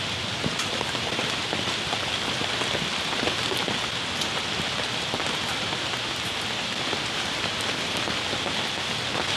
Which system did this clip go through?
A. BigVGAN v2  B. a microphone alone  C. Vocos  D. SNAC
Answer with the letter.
B